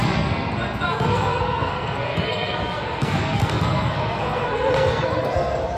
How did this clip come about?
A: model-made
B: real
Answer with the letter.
A